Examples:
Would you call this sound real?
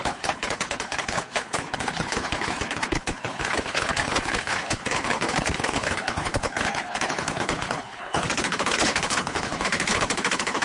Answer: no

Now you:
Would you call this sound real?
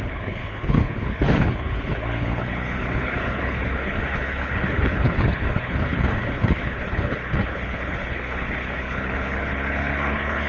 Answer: no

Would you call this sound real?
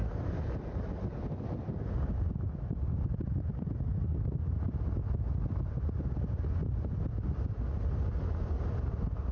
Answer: yes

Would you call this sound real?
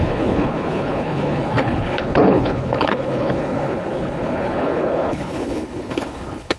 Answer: no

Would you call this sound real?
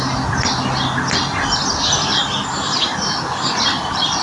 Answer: yes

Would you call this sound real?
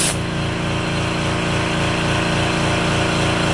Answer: yes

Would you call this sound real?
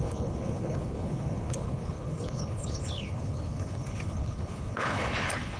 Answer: no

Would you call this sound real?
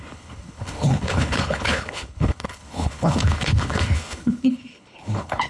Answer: no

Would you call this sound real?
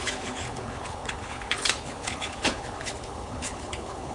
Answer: no